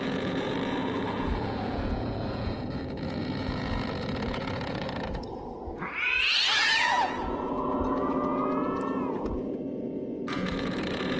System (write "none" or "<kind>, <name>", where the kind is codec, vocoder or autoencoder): vocoder, Vocos